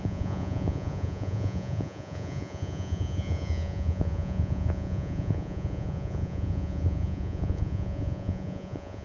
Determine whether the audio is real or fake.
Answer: fake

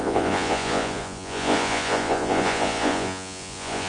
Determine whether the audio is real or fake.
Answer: fake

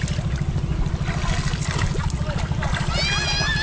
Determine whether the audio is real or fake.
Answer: real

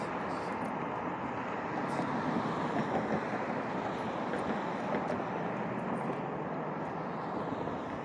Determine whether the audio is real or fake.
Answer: real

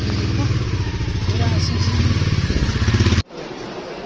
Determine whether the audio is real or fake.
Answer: real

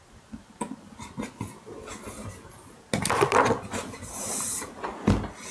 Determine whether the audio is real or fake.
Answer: real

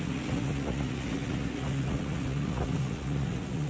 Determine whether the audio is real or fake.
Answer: fake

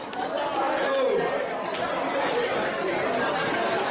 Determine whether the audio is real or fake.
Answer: real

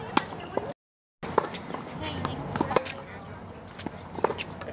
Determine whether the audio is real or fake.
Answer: real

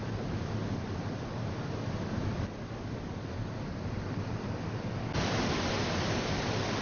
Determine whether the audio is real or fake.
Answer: real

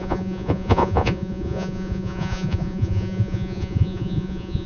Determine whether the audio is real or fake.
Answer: fake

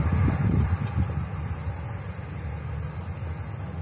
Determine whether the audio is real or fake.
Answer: real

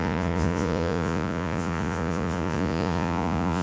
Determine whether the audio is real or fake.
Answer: fake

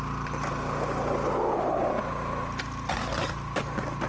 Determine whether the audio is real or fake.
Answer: real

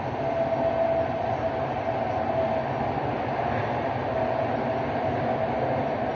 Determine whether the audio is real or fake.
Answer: real